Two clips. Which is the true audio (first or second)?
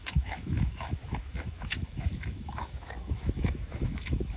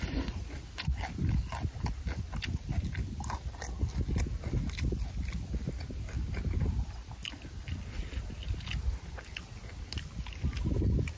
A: second